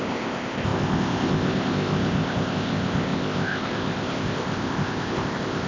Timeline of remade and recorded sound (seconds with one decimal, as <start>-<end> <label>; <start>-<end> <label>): 0.0-5.7 remade